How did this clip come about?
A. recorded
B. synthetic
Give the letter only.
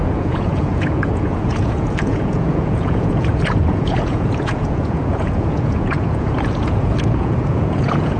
B